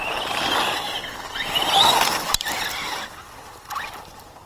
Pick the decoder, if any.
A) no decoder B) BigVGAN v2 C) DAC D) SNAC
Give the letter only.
A